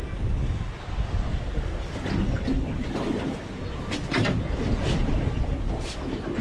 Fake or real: real